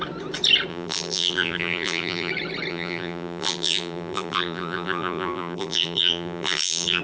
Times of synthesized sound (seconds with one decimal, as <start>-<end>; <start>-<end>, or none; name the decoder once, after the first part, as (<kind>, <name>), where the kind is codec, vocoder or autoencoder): 0.7-2.3 (vocoder, BigVGAN v2); 2.7-7.0